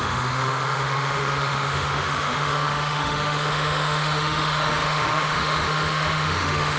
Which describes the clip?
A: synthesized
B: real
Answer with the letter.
A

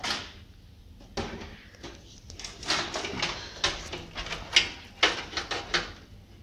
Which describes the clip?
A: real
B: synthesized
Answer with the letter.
A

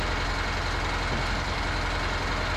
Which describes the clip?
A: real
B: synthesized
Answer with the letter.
A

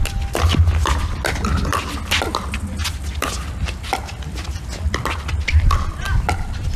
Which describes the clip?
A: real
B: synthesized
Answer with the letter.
A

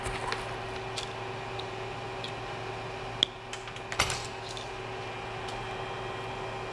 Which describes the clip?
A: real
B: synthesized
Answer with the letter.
A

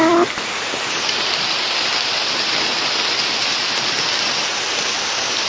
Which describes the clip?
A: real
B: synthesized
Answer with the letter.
A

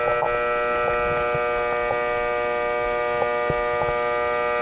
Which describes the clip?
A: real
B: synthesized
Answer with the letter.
A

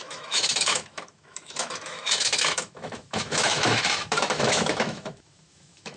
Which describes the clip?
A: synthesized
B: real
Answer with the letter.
A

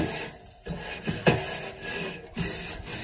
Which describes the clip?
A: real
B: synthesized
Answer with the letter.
A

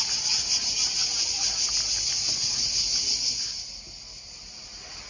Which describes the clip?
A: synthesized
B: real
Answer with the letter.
B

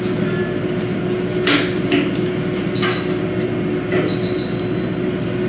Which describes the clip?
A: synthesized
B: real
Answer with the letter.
B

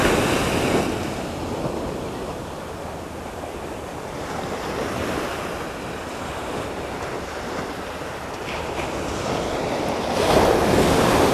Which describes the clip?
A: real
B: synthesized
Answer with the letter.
A